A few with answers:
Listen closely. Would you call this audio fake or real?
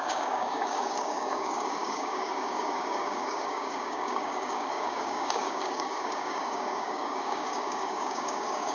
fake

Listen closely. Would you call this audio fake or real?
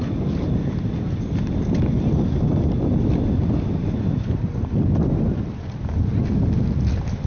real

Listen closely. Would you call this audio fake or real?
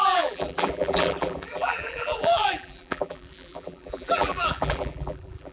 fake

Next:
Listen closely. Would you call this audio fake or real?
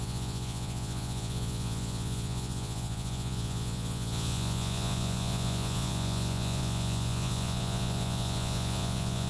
fake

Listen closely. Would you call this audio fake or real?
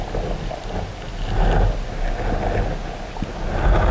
real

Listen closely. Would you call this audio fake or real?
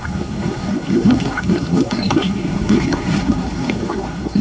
fake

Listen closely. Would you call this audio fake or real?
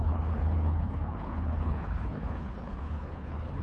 fake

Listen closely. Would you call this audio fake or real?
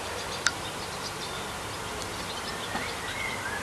real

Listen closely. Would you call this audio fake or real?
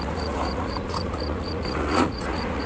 fake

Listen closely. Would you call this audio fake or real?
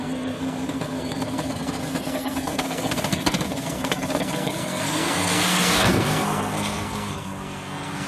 fake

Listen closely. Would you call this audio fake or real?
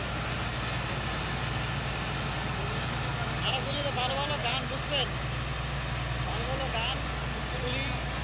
real